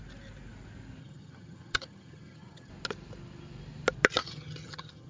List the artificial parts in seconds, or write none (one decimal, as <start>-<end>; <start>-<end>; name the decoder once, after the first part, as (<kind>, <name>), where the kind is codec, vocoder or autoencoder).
1.0-2.7 (vocoder, HiFi-GAN); 4.2-5.1